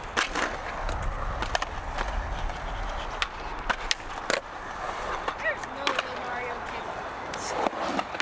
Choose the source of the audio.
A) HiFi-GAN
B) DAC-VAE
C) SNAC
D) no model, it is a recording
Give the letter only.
D